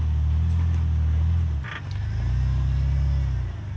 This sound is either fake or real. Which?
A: real